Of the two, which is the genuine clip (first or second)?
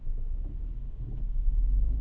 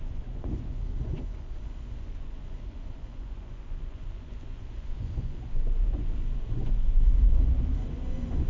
first